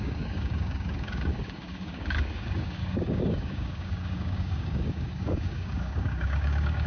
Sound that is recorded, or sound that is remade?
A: remade